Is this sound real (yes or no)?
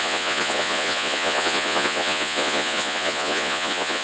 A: no